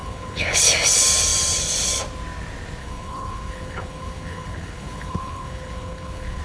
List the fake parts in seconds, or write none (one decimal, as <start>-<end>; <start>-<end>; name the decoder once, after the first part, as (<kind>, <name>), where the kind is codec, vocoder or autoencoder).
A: 0.0-0.6 (codec, HILCodec); 2.8-6.4